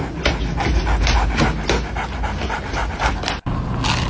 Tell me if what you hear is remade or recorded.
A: recorded